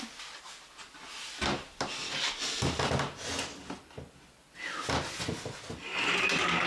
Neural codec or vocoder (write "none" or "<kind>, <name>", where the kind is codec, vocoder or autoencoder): none